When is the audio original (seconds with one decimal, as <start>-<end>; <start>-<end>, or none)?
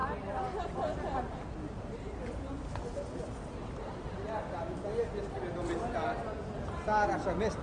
0.0-7.6